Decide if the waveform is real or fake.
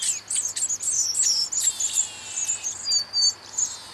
real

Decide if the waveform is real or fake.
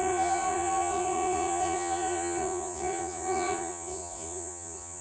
fake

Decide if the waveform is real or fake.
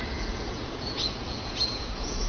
fake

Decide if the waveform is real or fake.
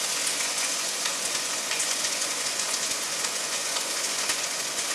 fake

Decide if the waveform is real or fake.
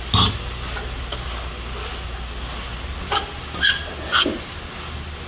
real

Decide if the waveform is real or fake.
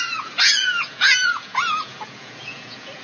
fake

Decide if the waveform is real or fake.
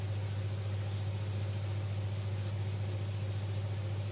real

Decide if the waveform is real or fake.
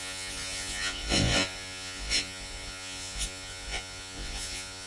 fake